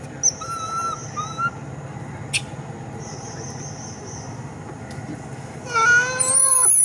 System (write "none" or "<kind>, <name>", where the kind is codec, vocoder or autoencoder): none